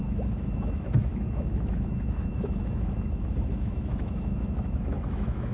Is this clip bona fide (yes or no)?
no